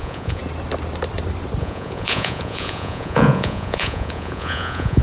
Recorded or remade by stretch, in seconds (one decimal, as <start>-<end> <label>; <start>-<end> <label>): 0.0-0.4 remade; 0.4-1.6 recorded; 1.6-5.0 remade